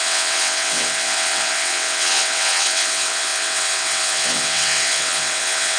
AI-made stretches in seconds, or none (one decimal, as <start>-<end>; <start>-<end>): 0.0-5.8